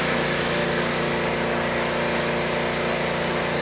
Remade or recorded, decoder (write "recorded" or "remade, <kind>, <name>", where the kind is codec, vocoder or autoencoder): recorded